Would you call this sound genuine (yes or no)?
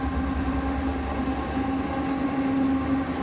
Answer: yes